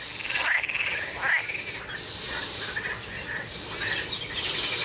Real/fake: real